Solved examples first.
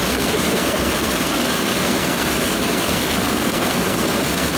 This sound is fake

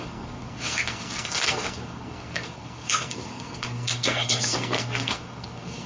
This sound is fake